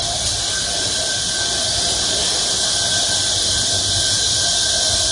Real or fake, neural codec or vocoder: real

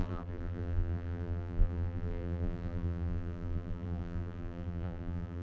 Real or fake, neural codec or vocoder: fake, vocoder, BigVGAN v2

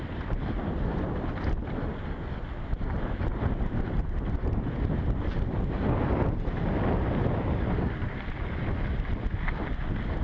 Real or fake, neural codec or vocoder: real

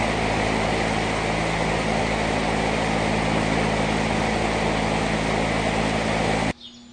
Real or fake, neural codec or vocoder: real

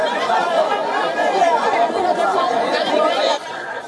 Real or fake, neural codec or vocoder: fake, vocoder, Vocos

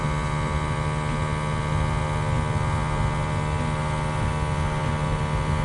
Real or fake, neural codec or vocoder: real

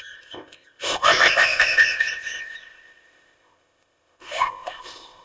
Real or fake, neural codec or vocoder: fake, codec, ZipCodec